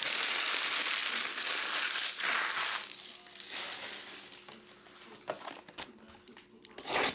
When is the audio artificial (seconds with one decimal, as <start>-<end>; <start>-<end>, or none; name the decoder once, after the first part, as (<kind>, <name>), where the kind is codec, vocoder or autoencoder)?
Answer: none